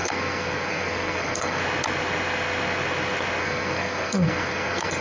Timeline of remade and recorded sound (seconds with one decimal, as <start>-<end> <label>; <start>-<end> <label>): 0.0-1.6 remade; 1.6-3.4 recorded; 3.4-5.0 remade